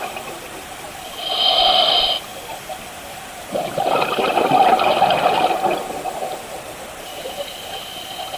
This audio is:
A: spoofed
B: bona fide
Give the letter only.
A